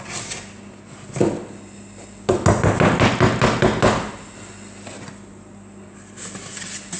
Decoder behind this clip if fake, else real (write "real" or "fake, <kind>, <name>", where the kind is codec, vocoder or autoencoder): real